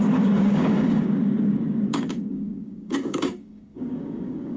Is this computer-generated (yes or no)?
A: yes